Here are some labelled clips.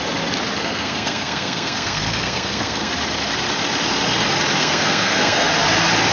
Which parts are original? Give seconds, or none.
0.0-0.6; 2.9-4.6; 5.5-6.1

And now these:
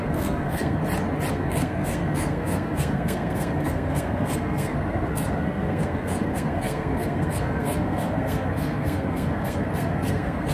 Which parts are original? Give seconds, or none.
0.8-1.3